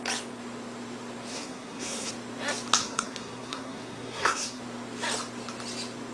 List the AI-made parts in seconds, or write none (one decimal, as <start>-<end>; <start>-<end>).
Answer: 1.3-2.1; 2.8-4.6